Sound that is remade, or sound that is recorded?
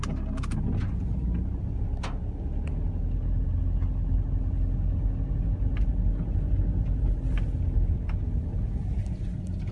recorded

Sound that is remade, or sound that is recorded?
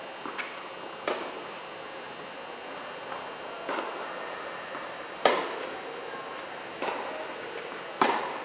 recorded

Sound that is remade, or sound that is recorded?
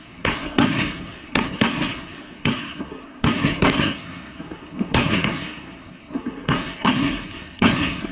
remade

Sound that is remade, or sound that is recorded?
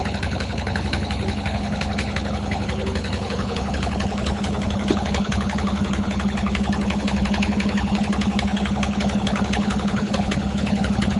remade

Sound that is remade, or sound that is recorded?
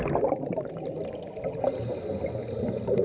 recorded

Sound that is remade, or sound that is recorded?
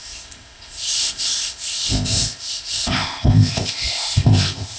remade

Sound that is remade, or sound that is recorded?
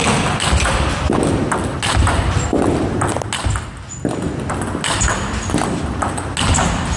recorded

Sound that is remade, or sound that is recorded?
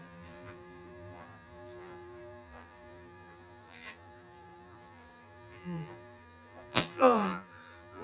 remade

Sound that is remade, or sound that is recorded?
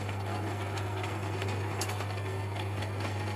remade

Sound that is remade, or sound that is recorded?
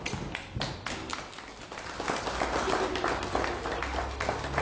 recorded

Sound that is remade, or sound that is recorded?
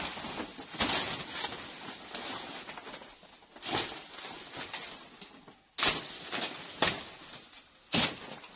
recorded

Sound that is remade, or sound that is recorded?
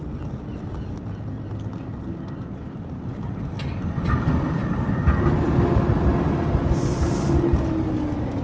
recorded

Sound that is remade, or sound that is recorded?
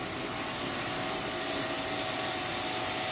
recorded